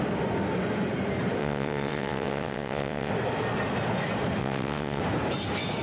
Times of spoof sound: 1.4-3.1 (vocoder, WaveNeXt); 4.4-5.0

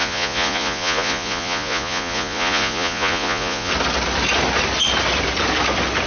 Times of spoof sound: 0.0-3.7 (vocoder, Vocos)

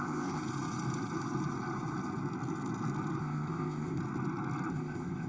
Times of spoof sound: 0.0-0.4 (codec, ZipCodec); 3.2-4.0; 4.7-5.3

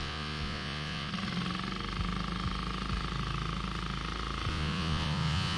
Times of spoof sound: 0.0-1.1 (vocoder, Vocos); 4.5-5.6